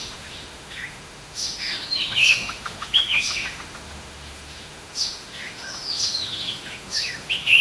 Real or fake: fake